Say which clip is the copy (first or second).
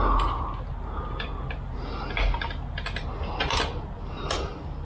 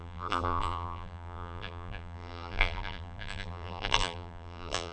second